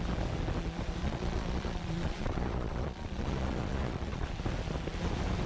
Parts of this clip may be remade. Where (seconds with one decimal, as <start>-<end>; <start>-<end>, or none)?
1.0-4.3